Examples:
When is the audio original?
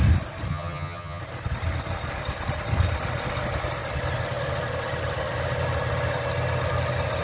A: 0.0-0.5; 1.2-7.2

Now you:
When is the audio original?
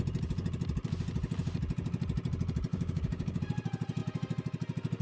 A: 0.0-2.7; 3.4-5.0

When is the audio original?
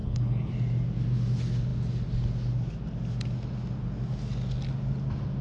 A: 0.5-5.4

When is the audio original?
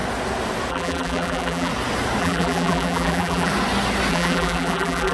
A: 0.0-0.7; 1.7-2.2; 3.5-4.1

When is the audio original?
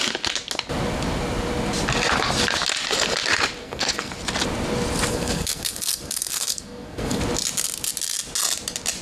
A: 0.0-3.6; 4.1-5.1; 7.2-9.0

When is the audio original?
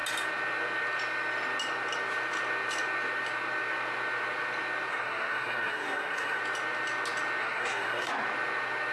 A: 0.0-4.9; 6.4-7.4; 8.1-8.9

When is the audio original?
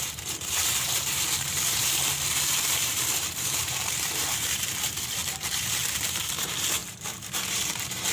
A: none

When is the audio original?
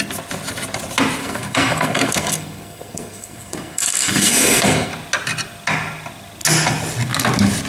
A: 0.0-1.2; 4.9-7.7